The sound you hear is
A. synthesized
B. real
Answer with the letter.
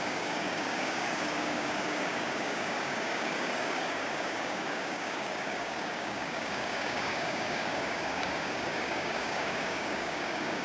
A